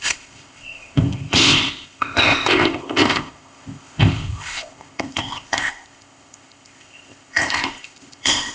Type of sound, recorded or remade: remade